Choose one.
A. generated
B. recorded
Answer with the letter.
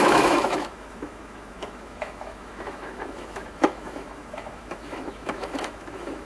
A